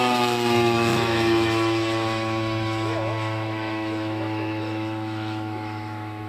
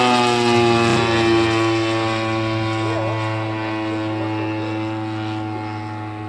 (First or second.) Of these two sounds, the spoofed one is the first